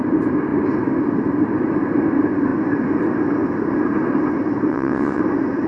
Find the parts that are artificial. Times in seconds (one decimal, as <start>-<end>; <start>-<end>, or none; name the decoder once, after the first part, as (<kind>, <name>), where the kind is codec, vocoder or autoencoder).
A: 4.7-5.2 (vocoder, WaveNeXt)